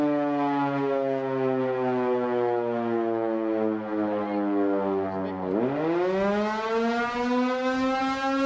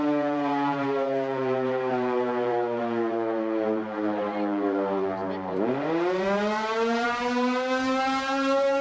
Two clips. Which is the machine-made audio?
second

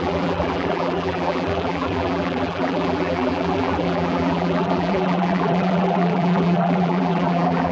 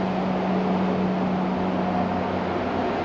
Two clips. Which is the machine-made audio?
first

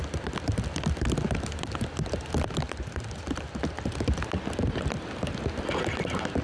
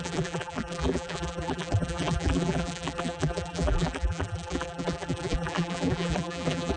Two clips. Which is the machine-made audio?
second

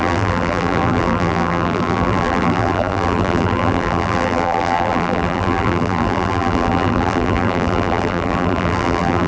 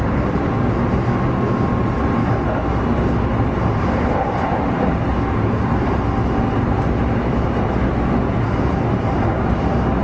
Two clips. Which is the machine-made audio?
first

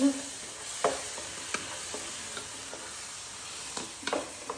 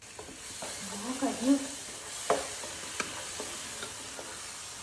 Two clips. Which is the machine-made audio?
second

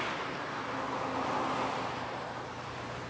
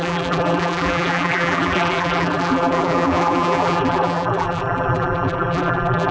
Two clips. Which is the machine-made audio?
second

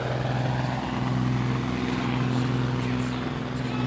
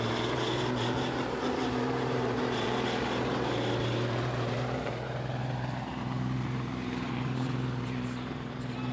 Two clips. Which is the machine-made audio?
second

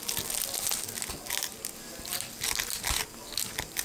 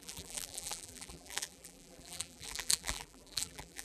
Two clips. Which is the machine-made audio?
second